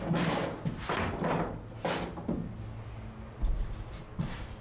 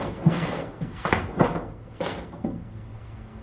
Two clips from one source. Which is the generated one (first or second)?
second